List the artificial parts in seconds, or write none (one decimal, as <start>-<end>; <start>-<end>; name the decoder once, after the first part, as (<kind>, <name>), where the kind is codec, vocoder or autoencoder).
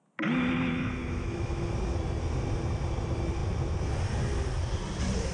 1.0-1.7 (autoencoder, DAC-VAE)